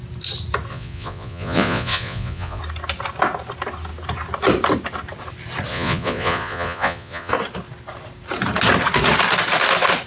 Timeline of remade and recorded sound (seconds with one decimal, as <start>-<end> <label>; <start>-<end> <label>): 0.0-0.7 recorded; 0.7-2.6 remade; 2.6-5.7 recorded; 5.7-7.3 remade; 7.3-10.1 recorded